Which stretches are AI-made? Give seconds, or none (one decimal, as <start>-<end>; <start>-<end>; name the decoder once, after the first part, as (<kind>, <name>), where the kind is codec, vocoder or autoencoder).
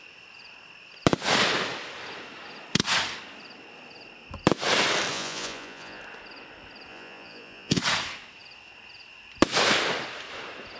5.1-6.0 (vocoder, Vocos); 6.9-7.8